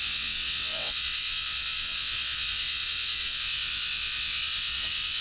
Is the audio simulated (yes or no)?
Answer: yes